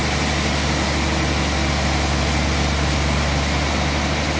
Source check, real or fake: real